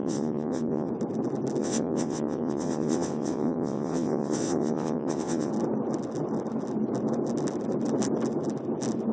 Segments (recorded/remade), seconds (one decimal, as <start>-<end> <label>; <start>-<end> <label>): 0.0-0.9 remade; 0.9-1.6 recorded; 1.6-5.5 remade; 5.5-9.1 recorded